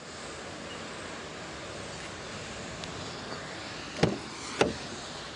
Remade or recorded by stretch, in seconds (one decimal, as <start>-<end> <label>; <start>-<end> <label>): 0.0-5.4 recorded